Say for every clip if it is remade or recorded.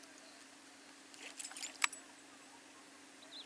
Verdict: recorded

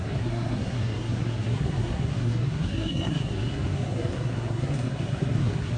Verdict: remade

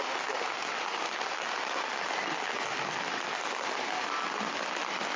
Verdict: recorded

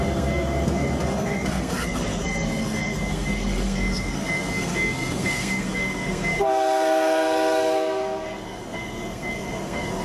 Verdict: remade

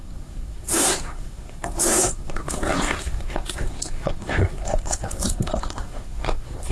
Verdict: remade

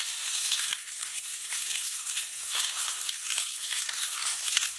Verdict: remade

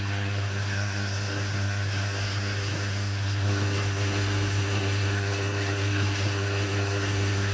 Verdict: remade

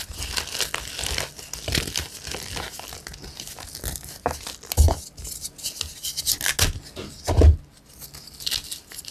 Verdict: recorded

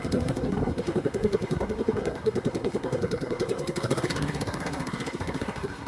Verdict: remade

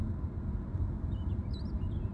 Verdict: recorded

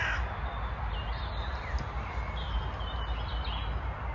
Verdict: recorded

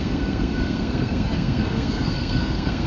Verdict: remade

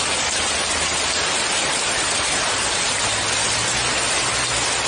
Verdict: recorded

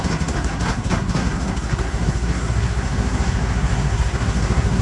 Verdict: remade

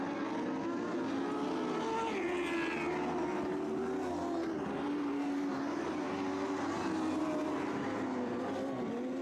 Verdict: recorded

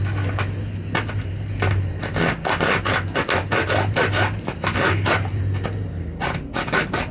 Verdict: recorded